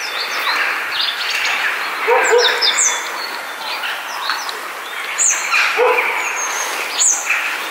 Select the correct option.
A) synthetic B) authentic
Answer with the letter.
B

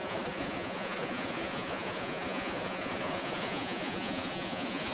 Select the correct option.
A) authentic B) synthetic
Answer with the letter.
B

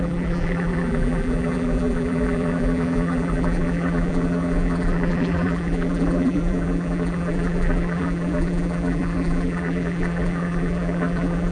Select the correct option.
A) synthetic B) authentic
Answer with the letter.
A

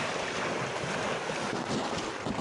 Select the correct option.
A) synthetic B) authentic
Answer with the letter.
B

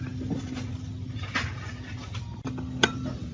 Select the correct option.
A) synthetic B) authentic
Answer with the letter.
B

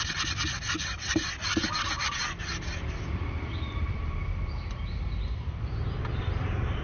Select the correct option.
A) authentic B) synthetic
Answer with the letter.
B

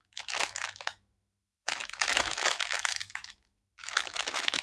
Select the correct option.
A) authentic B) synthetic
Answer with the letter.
B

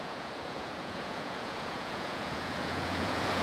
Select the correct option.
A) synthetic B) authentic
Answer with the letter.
A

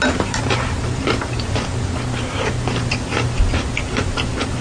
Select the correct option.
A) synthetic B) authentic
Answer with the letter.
A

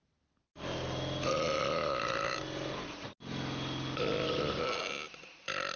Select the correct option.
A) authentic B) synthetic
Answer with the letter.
A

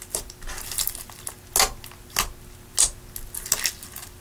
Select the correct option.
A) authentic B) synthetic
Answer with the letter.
A